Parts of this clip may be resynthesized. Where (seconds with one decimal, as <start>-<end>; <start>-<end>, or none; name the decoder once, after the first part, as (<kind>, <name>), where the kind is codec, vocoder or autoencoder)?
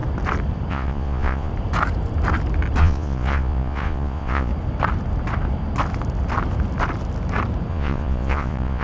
0.7-1.5 (vocoder, Vocos); 2.8-4.5; 7.7-8.8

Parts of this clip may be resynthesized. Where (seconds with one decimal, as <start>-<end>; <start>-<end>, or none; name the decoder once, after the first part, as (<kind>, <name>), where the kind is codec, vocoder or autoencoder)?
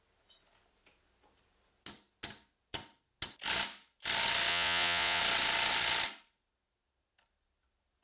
4.5-5.2 (vocoder, Vocos)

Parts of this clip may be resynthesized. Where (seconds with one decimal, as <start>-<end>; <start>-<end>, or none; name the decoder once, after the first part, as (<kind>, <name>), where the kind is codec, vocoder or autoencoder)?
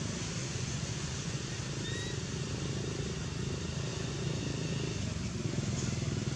0.4-1.6 (vocoder, Vocos); 3.9-4.4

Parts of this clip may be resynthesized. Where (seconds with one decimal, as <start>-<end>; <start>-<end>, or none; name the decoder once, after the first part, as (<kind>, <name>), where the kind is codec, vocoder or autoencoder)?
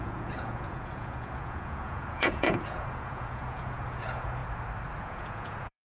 0.0-4.4 (vocoder, Vocos); 5.0-5.8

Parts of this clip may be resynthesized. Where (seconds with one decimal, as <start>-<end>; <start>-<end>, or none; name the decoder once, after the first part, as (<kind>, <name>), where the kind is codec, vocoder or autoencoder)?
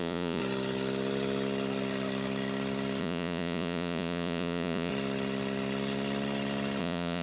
0.0-0.4 (vocoder, Vocos); 3.0-4.9; 6.8-7.2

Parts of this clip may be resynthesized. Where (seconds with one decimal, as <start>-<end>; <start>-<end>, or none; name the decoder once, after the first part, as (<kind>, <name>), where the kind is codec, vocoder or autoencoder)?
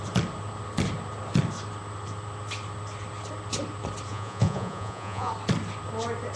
4.1-5.3 (vocoder, Vocos)